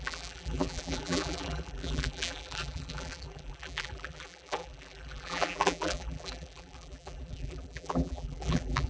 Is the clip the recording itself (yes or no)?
no